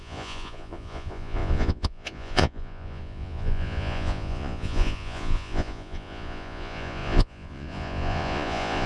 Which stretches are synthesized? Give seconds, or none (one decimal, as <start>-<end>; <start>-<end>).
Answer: 0.0-8.9